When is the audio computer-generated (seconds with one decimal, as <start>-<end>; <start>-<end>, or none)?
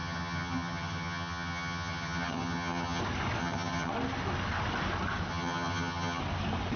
0.0-3.0; 3.4-3.9; 5.3-6.2